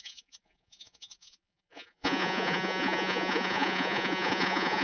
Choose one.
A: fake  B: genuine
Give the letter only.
A